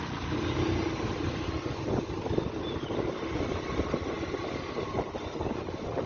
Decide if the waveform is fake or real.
real